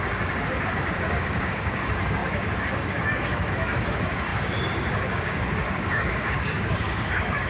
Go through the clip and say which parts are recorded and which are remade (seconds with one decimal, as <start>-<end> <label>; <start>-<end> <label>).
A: 0.0-7.5 remade